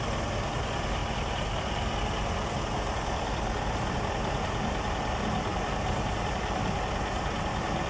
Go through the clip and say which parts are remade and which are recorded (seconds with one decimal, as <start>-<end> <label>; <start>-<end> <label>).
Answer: 0.0-7.9 recorded